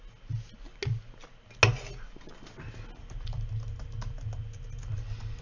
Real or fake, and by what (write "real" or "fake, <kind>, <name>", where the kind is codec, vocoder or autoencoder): real